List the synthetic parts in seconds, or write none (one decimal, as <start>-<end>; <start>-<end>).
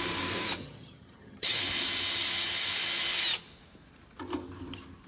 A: 0.6-1.6